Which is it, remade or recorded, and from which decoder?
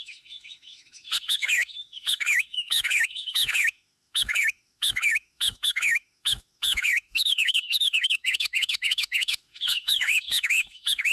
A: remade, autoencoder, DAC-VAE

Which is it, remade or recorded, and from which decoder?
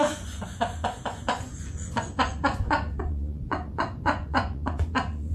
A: remade, vocoder, Vocos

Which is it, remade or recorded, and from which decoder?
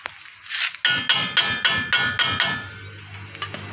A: recorded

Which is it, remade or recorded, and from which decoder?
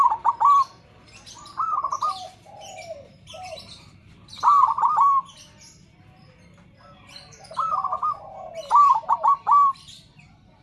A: remade, vocoder, BigVGAN v2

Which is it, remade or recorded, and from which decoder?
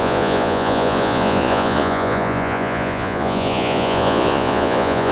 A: remade, vocoder, Vocos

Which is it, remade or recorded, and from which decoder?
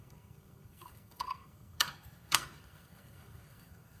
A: remade, codec, SNAC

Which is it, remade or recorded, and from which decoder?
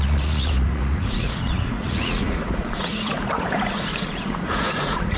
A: remade, vocoder, Vocos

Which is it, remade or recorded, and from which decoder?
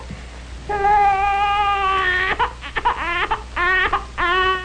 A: recorded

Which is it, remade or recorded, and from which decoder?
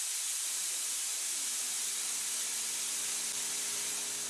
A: recorded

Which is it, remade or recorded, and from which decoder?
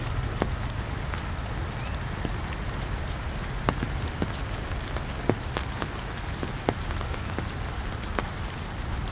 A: recorded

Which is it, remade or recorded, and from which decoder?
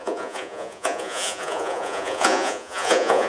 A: remade, vocoder, Vocos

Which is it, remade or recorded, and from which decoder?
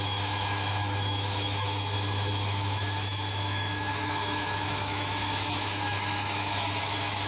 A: remade, autoencoder, DAC-VAE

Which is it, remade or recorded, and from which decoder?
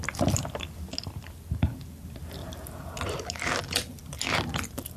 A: recorded